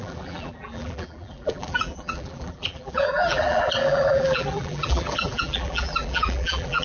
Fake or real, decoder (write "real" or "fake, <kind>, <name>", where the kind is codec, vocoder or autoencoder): fake, vocoder, BigVGAN v2